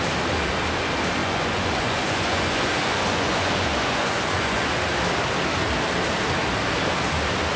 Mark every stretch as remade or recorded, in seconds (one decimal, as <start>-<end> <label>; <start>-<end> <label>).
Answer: 0.0-1.2 recorded; 1.2-4.8 remade; 4.8-7.6 recorded